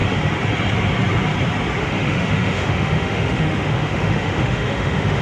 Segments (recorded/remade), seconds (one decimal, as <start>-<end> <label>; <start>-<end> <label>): 0.0-1.8 recorded; 1.8-5.2 remade